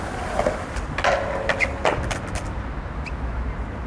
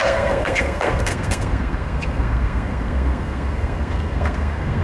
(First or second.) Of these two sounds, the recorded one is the first